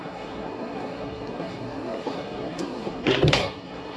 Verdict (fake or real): fake